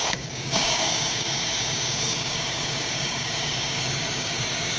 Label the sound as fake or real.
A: fake